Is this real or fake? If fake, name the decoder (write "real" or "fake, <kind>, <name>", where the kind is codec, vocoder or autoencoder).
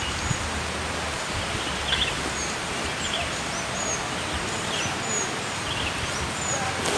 real